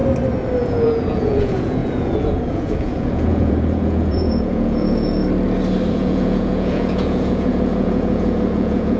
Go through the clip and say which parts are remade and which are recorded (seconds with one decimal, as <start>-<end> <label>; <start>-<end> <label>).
0.0-0.6 recorded; 0.6-5.2 remade; 5.2-5.9 recorded; 5.9-9.0 remade